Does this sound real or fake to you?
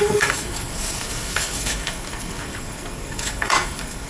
fake